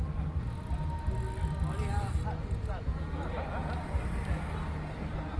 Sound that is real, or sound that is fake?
real